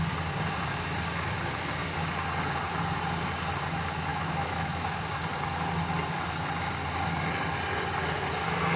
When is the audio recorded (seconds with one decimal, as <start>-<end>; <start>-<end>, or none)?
0.0-4.1; 5.0-8.8